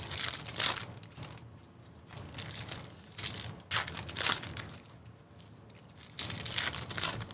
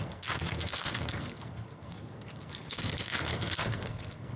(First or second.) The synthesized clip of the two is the second